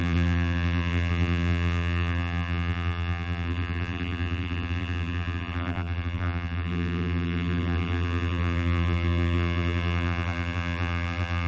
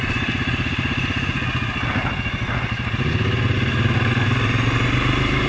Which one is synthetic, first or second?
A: first